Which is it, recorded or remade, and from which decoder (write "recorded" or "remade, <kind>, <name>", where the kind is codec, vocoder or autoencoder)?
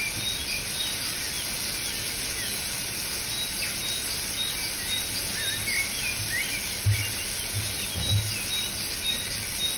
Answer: recorded